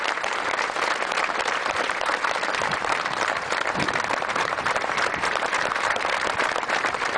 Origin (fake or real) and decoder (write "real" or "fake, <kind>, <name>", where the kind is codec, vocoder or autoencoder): fake, vocoder, BigVGAN v2